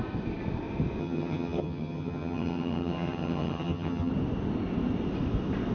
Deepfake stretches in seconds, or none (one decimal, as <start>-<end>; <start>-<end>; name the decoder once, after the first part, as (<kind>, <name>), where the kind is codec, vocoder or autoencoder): 1.0-4.1 (vocoder, HiFi-GAN)